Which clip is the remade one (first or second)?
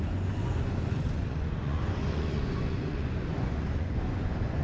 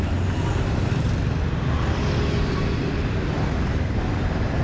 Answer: first